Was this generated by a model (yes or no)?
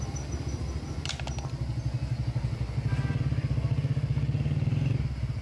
no